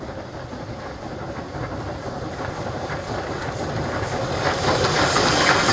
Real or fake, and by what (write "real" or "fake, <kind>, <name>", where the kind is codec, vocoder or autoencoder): real